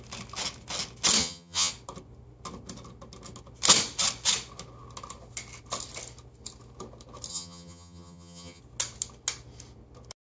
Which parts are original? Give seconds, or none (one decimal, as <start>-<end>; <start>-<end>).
0.0-1.2; 1.7-7.3; 8.6-10.4

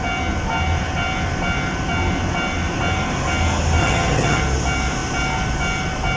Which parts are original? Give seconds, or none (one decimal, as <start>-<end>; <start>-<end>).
0.0-3.8; 4.4-6.2